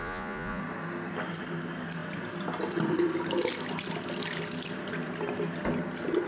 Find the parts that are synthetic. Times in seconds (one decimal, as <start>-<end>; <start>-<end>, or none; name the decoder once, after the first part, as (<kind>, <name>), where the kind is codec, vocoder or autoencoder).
0.0-0.6 (vocoder, Vocos)